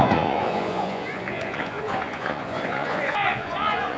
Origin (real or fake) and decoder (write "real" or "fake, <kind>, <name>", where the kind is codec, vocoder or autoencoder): fake, vocoder, Vocos